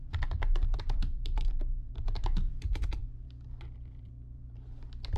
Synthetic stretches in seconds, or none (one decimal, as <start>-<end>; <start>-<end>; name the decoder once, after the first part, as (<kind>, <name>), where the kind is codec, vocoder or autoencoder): 0.0-5.2 (vocoder, BigVGAN v2)